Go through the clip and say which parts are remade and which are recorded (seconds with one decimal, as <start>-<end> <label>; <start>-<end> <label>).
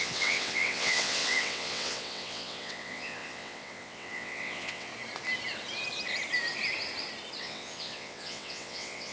0.0-4.9 remade; 4.9-7.4 recorded; 7.4-9.1 remade